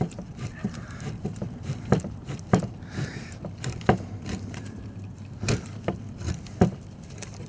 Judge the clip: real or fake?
fake